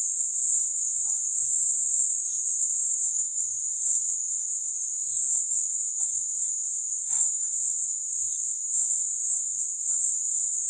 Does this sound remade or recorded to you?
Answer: remade